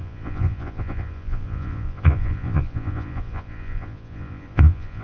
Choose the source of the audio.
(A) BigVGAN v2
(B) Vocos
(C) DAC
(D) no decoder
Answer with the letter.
B